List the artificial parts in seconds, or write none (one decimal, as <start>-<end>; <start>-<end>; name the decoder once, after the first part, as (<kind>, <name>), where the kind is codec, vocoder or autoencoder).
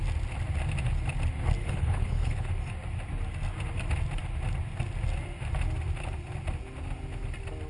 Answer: 1.6-2.5 (codec, HILCodec)